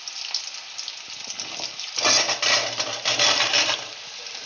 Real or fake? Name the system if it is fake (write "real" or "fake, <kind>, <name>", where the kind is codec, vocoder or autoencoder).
real